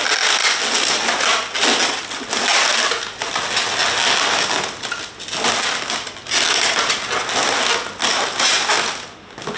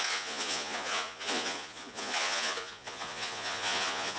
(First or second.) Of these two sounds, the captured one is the first